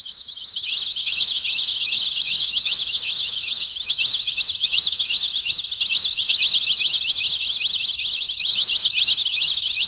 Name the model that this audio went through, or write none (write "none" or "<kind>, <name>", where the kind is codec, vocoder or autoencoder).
autoencoder, DAC-VAE